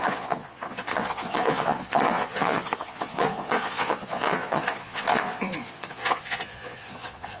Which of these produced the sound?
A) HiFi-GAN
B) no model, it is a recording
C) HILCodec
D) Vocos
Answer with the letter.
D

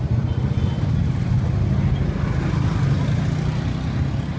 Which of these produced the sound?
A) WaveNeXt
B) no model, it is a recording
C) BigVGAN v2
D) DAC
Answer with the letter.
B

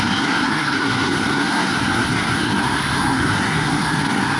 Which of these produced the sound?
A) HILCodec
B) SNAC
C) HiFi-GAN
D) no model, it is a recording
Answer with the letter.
B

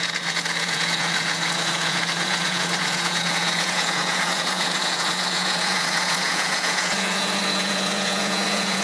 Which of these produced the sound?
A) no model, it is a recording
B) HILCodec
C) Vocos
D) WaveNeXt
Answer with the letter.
C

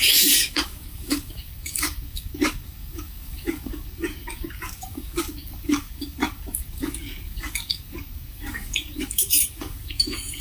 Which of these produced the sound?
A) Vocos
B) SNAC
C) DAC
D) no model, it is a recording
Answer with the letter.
C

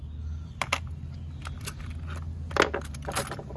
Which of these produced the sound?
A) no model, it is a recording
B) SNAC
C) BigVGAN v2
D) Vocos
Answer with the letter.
A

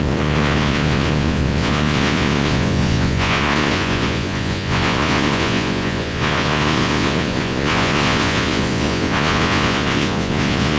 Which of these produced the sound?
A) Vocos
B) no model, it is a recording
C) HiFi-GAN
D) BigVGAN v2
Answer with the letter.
A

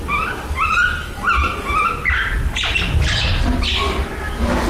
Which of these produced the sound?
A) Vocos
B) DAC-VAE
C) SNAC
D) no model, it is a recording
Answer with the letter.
D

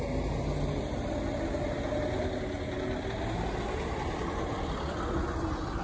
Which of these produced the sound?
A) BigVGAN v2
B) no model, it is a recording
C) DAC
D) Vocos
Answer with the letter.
B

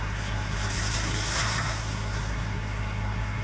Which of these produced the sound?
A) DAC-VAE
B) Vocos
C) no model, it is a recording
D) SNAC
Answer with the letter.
D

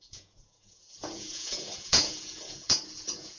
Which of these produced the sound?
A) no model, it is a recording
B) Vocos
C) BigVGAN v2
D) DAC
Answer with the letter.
B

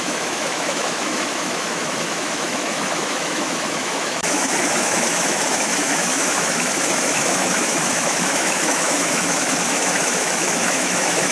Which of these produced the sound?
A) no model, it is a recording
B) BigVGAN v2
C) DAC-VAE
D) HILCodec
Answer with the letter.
C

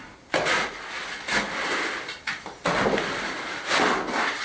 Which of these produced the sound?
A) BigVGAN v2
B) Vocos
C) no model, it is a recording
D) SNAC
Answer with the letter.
C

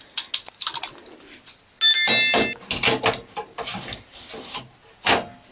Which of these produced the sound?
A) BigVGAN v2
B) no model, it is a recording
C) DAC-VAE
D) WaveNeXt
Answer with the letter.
B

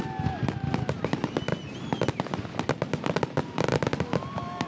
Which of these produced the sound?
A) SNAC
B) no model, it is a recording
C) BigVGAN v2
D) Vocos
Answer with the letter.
B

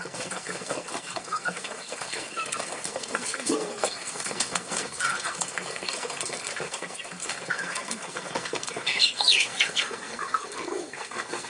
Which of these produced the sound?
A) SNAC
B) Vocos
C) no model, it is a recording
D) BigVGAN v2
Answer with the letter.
A